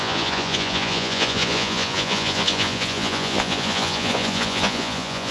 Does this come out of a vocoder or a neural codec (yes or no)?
yes